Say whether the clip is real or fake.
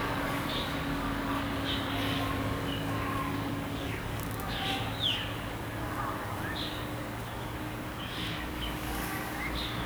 fake